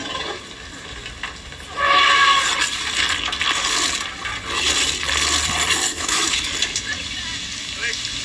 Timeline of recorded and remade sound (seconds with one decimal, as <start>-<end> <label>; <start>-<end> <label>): 0.0-5.9 recorded; 5.9-6.5 remade; 6.5-8.2 recorded